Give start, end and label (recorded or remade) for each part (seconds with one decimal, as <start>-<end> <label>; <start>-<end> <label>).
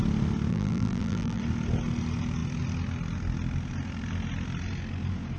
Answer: 0.0-0.5 recorded; 0.5-1.4 remade; 1.4-5.4 recorded